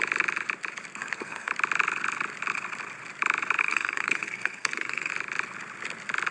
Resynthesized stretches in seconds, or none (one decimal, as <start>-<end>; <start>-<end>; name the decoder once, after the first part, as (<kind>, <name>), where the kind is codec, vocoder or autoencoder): 1.0-1.5 (codec, SNAC); 3.6-5.1